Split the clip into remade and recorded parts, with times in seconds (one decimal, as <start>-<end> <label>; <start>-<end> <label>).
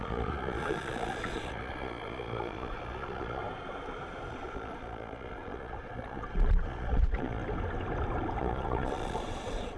0.0-3.4 remade; 3.4-4.3 recorded; 4.3-7.4 remade; 7.4-8.4 recorded; 8.4-9.8 remade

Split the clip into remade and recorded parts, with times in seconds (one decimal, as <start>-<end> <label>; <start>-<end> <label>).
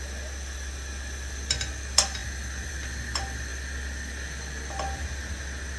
0.0-5.8 recorded